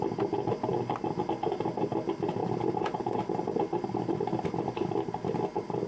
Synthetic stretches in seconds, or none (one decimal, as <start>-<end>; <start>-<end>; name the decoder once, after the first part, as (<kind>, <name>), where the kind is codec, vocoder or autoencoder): none